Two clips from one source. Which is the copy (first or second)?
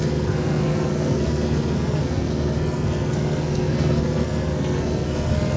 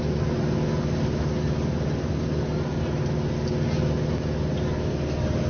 first